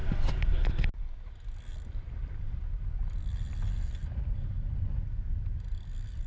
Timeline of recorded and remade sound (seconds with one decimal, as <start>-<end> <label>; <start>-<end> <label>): 0.0-6.3 recorded